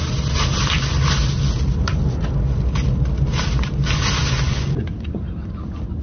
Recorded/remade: recorded